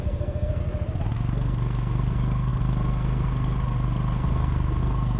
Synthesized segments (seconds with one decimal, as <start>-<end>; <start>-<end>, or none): 0.0-0.6; 1.1-5.2

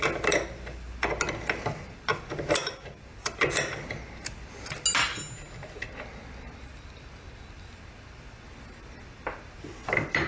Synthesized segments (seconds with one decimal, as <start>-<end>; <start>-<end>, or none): none

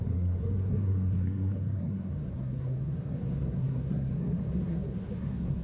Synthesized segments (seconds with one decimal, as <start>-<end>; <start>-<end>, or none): 0.0-5.6

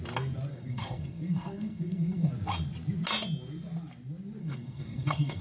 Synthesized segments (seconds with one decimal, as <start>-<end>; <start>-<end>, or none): 0.5-2.3; 4.4-5.4